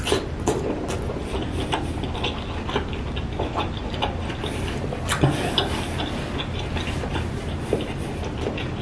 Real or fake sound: real